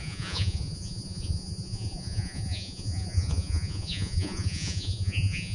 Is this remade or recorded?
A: remade